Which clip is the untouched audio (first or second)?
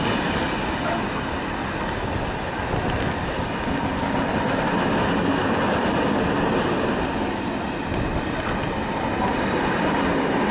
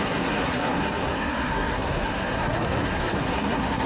first